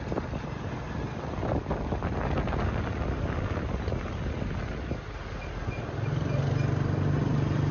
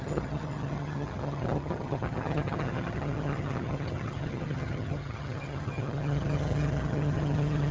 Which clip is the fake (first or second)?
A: second